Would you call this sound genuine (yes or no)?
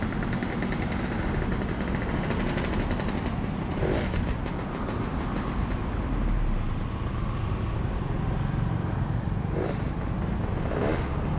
yes